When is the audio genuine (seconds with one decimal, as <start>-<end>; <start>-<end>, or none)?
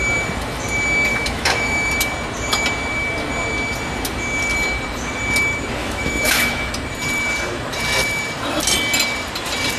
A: 0.0-1.1; 1.9-5.8; 6.7-9.8